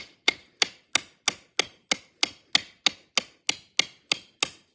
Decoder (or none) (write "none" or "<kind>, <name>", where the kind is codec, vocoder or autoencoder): none